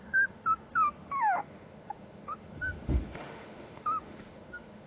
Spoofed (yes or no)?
yes